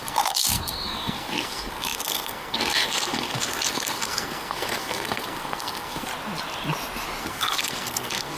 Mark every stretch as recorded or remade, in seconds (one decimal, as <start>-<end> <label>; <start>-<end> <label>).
0.0-6.1 remade; 6.1-7.2 recorded; 7.2-8.4 remade